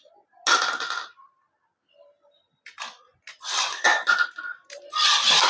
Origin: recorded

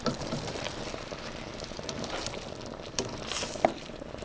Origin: remade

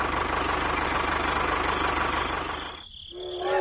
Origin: recorded